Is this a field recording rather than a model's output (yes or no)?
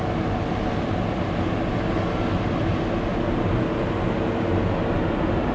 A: yes